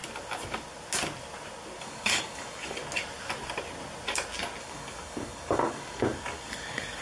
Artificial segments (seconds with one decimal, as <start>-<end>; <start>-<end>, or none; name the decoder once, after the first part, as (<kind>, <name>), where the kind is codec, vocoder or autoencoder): 1.8-2.8 (codec, DAC); 4.6-7.0